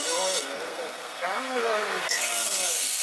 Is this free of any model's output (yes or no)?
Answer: no